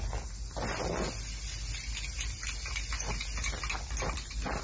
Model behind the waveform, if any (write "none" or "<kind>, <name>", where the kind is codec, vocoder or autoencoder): none